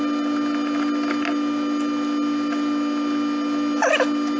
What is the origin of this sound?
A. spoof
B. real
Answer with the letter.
B